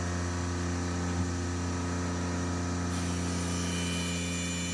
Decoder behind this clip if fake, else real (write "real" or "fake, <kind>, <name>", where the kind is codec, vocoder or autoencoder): real